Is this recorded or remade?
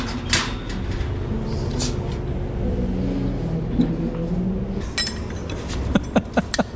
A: recorded